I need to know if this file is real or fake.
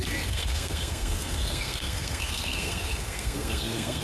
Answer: fake